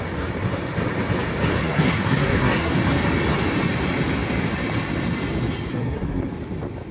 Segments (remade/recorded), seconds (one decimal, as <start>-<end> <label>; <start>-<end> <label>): 0.0-1.5 recorded; 1.5-2.7 remade; 2.7-5.7 recorded; 5.7-6.3 remade; 6.3-6.9 recorded